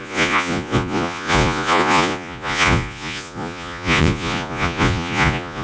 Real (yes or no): no